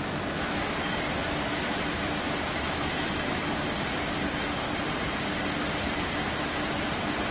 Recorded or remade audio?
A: recorded